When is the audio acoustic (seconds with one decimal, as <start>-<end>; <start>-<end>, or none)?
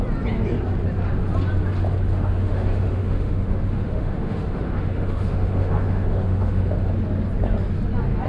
0.0-2.1; 6.9-8.3